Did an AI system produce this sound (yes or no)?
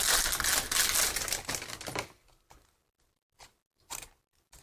no